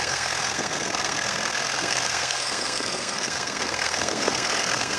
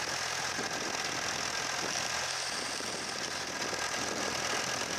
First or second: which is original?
second